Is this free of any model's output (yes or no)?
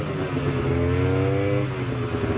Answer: yes